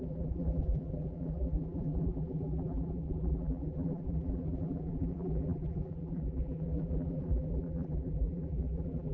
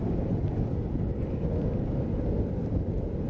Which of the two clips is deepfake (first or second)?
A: first